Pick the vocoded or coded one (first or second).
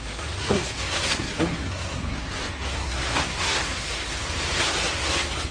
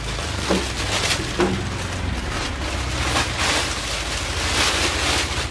first